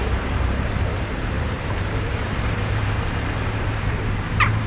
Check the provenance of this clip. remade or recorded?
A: remade